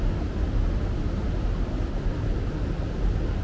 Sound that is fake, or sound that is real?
real